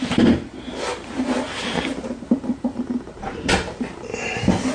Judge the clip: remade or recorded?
recorded